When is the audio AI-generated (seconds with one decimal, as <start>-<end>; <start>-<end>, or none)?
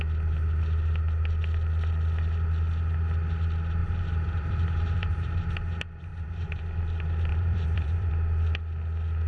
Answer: 3.8-5.1; 6.1-6.6; 7.3-8.1